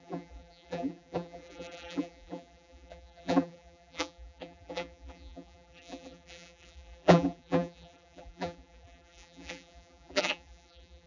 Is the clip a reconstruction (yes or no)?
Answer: yes